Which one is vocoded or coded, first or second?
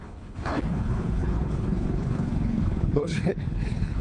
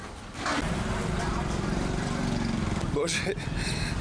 first